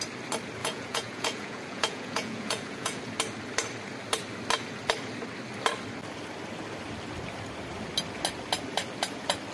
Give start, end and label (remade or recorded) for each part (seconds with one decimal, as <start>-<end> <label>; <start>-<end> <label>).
0.0-0.6 recorded; 0.6-3.0 remade; 3.0-9.5 recorded